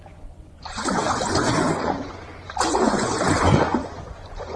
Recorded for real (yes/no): no